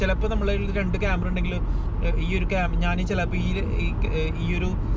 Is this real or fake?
real